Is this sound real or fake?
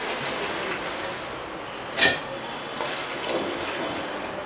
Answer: real